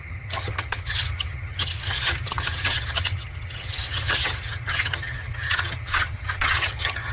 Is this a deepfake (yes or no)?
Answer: yes